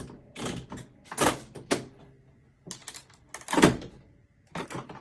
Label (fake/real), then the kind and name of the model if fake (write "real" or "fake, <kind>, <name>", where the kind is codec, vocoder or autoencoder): real